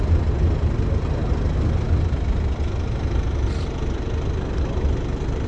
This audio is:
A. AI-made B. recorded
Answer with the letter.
B